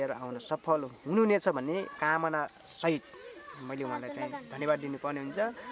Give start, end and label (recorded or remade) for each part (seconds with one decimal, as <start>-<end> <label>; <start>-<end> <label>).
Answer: 0.0-5.7 recorded